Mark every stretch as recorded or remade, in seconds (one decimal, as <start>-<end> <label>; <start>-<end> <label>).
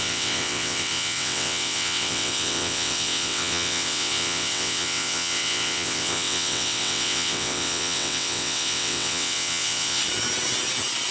0.0-10.0 remade; 10.0-11.1 recorded